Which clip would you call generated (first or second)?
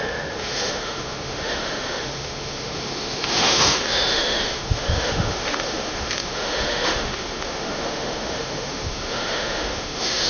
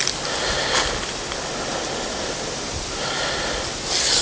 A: first